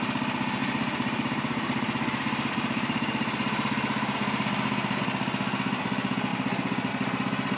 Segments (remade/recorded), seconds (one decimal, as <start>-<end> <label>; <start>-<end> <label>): 0.0-0.6 recorded; 0.6-5.0 remade; 5.0-7.6 recorded